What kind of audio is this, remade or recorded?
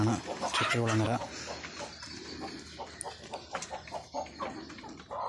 recorded